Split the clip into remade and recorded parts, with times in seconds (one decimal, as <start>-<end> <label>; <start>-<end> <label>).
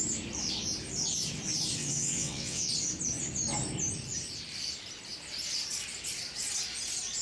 0.0-1.8 recorded; 1.8-2.7 remade; 2.7-7.2 recorded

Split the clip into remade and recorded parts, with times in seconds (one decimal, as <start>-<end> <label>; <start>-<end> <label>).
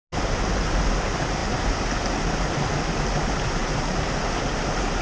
0.0-5.0 recorded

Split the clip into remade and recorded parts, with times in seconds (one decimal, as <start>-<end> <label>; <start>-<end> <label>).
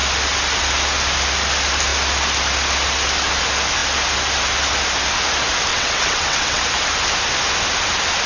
0.0-5.7 recorded; 5.7-6.6 remade; 6.6-8.3 recorded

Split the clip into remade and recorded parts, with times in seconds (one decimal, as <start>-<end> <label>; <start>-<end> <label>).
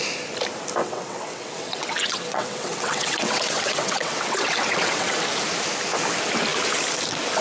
0.0-0.8 recorded; 0.8-5.2 remade; 5.2-7.4 recorded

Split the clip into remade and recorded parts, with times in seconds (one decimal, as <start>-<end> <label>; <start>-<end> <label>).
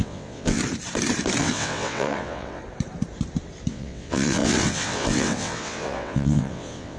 0.0-0.6 remade; 0.6-1.4 recorded; 1.4-2.6 remade; 2.6-3.7 recorded; 3.7-7.0 remade